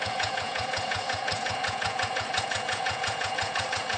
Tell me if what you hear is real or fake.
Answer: fake